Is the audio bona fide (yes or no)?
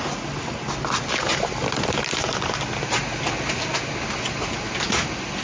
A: yes